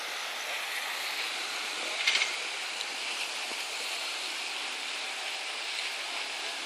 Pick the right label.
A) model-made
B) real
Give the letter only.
B